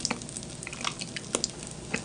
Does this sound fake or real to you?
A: real